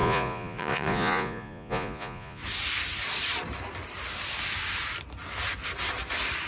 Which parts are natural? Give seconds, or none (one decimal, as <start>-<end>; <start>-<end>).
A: 2.4-6.5